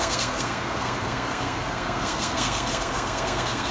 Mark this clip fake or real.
fake